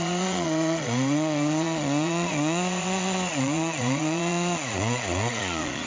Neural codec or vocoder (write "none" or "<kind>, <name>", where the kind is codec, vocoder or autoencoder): vocoder, Vocos